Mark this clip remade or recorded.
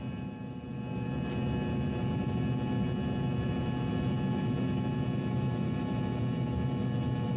recorded